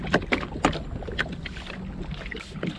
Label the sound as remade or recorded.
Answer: recorded